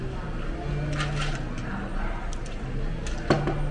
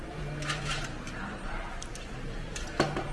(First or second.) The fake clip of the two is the second